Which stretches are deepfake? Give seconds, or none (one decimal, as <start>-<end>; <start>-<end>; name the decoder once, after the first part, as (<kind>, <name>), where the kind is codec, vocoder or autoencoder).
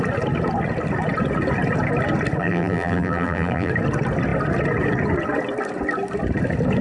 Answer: 2.4-3.7 (vocoder, BigVGAN v2)